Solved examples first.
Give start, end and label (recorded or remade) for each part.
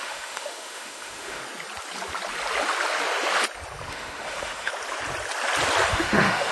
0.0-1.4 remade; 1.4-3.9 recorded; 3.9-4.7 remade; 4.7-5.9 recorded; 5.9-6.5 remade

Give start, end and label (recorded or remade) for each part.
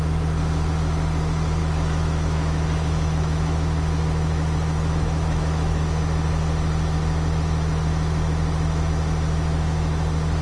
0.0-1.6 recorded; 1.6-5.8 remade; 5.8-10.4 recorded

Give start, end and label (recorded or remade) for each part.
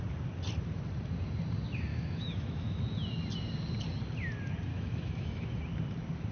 0.0-1.9 recorded; 1.9-2.8 remade; 2.8-4.7 recorded; 4.7-5.6 remade; 5.6-6.3 recorded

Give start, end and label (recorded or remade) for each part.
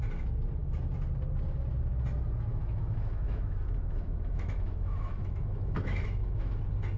0.0-2.5 recorded; 2.5-6.6 remade; 6.6-7.0 recorded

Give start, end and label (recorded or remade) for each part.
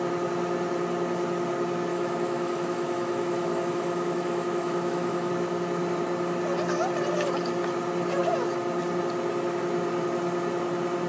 0.0-1.9 recorded; 1.9-5.3 remade; 5.3-11.1 recorded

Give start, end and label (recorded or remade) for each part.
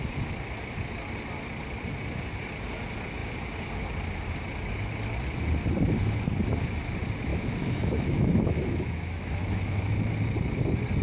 0.0-7.3 recorded; 7.3-10.0 remade; 10.0-11.0 recorded